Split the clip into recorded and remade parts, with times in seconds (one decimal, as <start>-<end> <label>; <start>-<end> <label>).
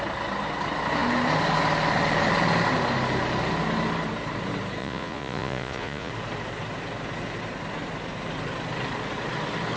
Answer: 0.0-4.8 recorded; 4.8-6.1 remade; 6.1-9.8 recorded